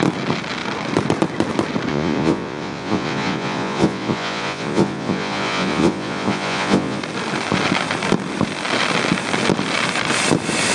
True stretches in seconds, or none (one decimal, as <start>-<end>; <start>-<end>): 0.0-1.9; 7.0-10.7